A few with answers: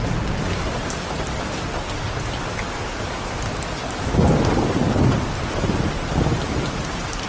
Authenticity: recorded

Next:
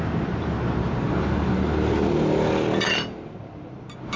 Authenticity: recorded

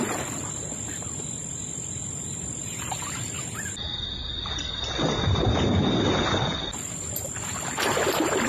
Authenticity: recorded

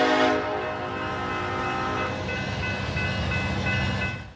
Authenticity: recorded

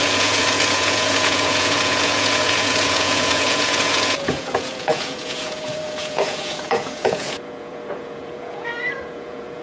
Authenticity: remade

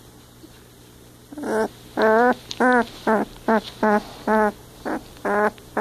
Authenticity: recorded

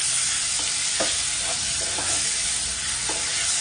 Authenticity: recorded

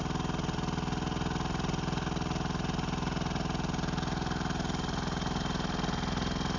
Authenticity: recorded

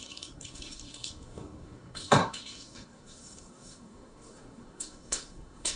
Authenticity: remade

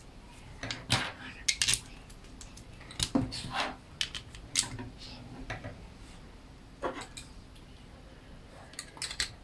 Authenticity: recorded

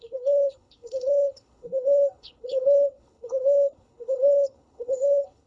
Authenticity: remade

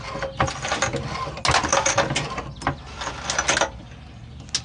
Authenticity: recorded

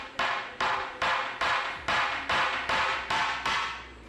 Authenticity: recorded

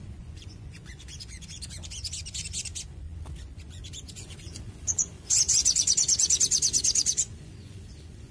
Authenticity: remade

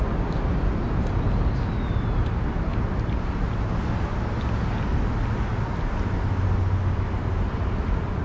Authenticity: recorded